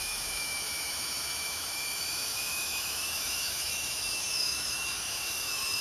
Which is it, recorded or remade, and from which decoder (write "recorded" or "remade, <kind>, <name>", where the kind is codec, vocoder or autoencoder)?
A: remade, autoencoder, DAC-VAE